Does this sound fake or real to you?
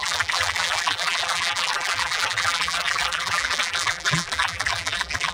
fake